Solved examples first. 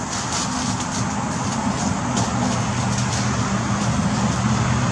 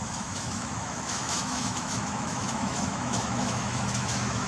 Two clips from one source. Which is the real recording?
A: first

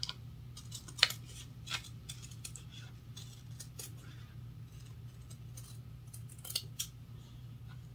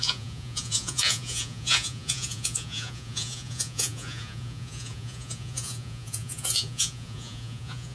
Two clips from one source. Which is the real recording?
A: first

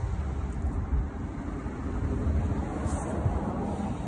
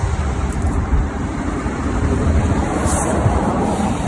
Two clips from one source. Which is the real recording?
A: first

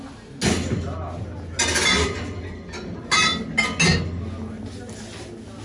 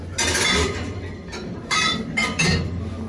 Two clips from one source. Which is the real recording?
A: first